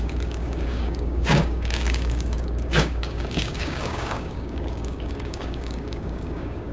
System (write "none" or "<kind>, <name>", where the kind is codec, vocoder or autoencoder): codec, DAC